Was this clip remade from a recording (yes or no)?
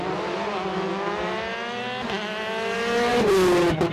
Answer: no